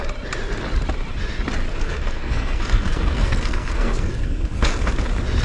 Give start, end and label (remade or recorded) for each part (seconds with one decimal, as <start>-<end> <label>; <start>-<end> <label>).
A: 0.0-1.7 recorded; 1.7-4.9 remade; 4.9-5.4 recorded